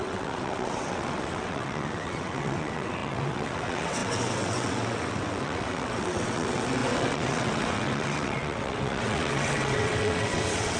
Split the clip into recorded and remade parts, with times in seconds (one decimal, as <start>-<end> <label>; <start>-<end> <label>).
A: 0.0-10.8 remade